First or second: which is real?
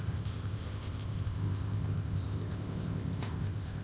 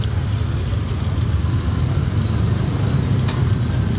second